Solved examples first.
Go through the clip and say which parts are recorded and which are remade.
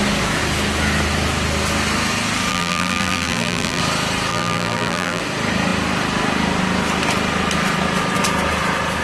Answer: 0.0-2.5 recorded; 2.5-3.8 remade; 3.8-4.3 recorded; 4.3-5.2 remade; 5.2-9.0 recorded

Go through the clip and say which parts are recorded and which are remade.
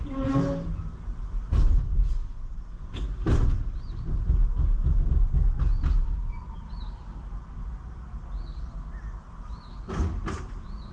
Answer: 0.0-10.9 recorded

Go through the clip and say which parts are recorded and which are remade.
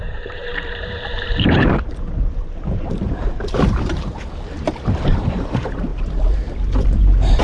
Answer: 0.0-7.4 remade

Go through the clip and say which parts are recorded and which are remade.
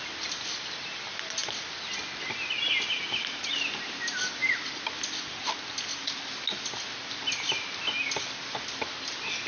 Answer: 0.0-9.5 recorded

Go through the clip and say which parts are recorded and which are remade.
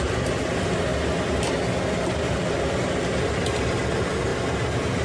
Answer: 0.0-5.0 recorded